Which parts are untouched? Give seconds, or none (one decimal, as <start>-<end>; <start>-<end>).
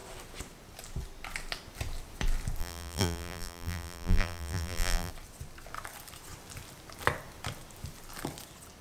0.0-2.6; 5.1-8.8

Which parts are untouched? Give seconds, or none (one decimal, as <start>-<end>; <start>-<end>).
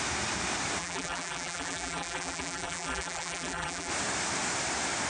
0.0-0.8; 3.9-5.1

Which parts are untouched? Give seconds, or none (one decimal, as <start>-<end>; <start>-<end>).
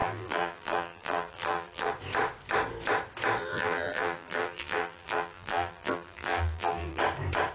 1.9-3.4; 7.0-7.5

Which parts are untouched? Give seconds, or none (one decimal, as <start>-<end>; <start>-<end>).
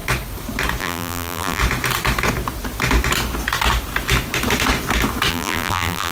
0.0-0.8; 1.6-5.3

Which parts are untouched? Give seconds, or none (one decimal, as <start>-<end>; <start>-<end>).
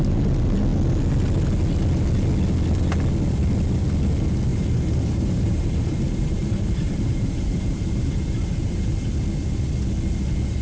0.0-4.5; 9.0-10.6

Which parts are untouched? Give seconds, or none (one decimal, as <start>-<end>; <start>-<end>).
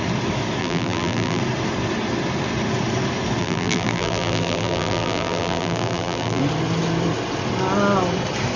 0.0-0.6; 1.4-3.4; 6.4-8.6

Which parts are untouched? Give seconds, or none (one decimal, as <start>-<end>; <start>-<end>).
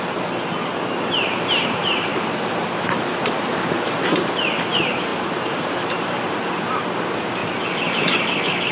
0.7-1.6; 7.4-8.7